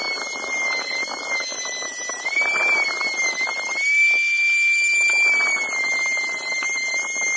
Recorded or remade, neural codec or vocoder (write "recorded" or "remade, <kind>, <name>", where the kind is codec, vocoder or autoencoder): recorded